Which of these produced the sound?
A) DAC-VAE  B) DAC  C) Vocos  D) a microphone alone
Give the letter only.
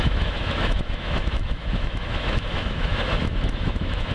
A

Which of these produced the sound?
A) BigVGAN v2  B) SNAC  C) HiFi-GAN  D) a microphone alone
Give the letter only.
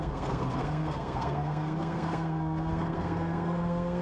B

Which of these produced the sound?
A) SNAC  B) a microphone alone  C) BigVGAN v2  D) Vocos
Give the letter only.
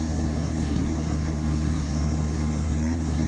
A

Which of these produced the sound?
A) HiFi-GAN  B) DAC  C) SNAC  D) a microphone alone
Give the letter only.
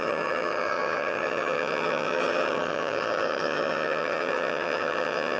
A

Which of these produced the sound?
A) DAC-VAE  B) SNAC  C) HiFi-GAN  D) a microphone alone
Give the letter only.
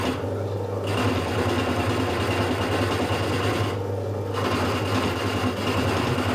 D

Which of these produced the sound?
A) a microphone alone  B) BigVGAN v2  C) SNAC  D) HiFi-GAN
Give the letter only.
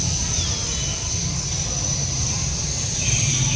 A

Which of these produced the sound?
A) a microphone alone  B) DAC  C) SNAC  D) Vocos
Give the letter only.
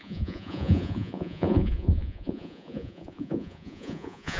D